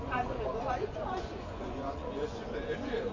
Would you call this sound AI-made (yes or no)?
yes